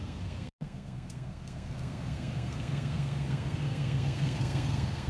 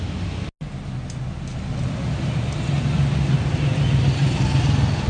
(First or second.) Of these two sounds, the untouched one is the second